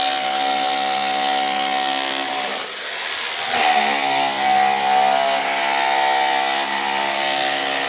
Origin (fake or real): real